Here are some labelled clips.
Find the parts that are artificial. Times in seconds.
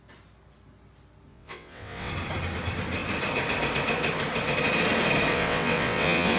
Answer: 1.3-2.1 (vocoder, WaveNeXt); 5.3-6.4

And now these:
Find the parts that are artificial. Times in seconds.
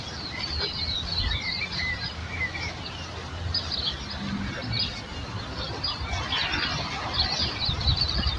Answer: 2.2-2.8 (autoencoder, DAC-VAE)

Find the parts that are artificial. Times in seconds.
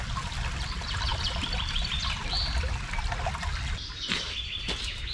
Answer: none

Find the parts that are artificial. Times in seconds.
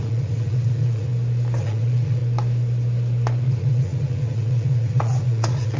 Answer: 0.0-1.1 (vocoder, Vocos); 1.6-2.2; 3.4-5.8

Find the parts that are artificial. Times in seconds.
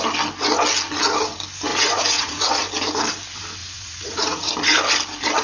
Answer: 1.7-2.5 (vocoder, Vocos); 3.6-4.5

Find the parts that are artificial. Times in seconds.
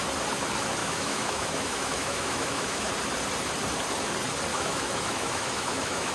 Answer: 0.8-2.9 (autoencoder, DAC-VAE); 4.5-6.1